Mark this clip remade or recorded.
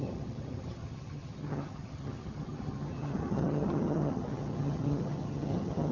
remade